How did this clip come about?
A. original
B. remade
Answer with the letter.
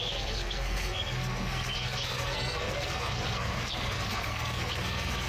B